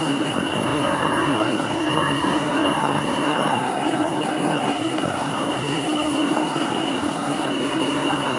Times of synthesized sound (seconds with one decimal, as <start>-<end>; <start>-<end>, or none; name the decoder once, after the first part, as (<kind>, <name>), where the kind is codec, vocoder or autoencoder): 0.0-8.4 (codec, SNAC)